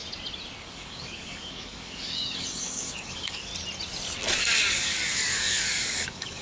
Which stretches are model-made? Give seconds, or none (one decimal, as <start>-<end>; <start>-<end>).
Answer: 0.6-3.5; 4.4-6.4